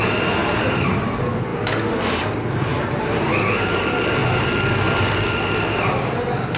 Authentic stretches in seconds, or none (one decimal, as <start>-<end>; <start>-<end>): 0.0-6.6